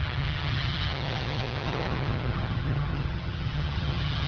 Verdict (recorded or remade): remade